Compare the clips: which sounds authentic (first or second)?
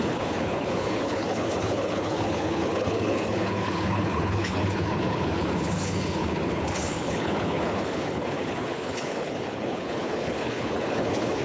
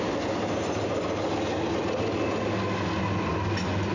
second